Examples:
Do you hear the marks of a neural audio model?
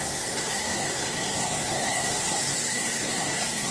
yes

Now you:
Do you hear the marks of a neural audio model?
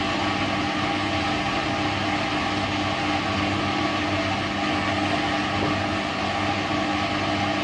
no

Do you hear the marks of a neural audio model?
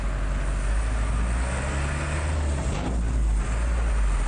no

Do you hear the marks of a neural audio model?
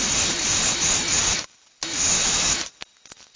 no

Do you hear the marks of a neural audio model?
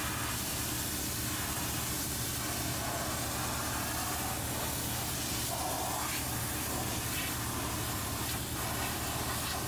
no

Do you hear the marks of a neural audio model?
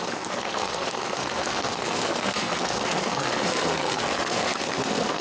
yes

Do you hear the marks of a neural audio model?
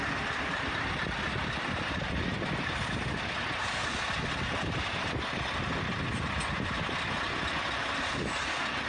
no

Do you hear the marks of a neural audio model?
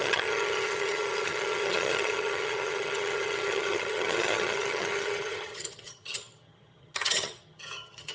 yes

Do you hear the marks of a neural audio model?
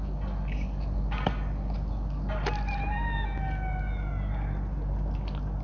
no